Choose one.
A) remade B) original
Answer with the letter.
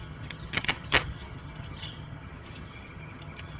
A